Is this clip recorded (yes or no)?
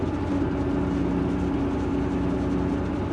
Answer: yes